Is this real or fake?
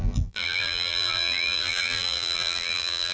fake